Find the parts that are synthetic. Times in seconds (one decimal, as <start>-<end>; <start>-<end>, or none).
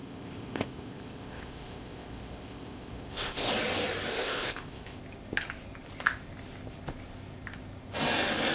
0.0-3.5; 4.1-5.0